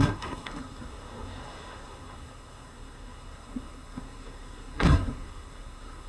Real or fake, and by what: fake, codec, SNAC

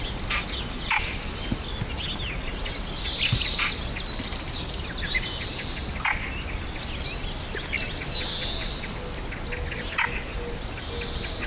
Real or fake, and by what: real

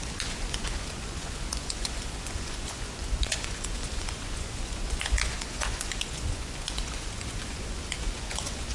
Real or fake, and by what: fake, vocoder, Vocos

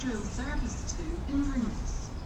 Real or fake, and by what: fake, vocoder, BigVGAN v2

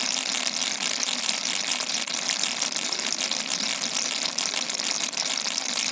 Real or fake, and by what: fake, vocoder, BigVGAN v2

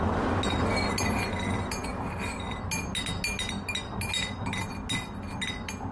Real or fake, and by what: real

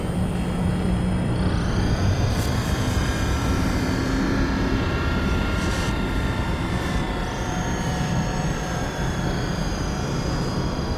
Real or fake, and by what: fake, vocoder, BigVGAN v2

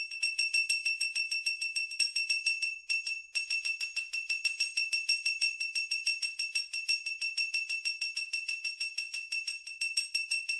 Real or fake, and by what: fake, vocoder, Vocos